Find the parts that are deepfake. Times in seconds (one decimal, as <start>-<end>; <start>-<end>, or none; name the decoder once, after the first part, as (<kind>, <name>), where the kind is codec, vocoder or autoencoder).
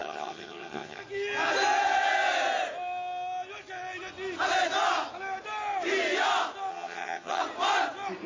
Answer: 0.0-1.0 (vocoder, HiFi-GAN); 6.7-7.4